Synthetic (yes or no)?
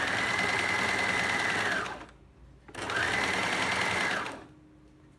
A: no